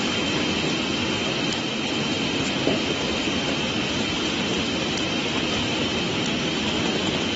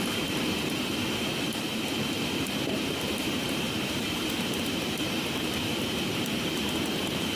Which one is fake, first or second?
second